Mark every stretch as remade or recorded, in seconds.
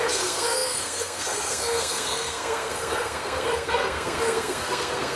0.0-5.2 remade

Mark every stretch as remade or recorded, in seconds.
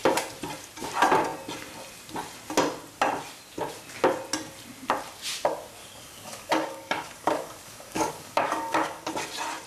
0.0-5.8 recorded; 5.8-9.1 remade; 9.1-9.7 recorded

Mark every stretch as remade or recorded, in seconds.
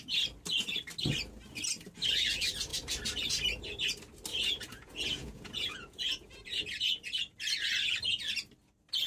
0.0-4.3 recorded; 4.3-6.6 remade; 6.6-9.1 recorded